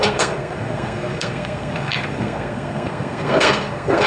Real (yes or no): no